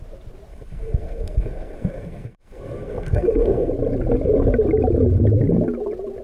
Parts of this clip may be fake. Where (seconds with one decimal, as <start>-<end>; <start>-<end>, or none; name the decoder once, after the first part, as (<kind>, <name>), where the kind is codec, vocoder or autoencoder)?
0.5-3.7 (codec, SNAC)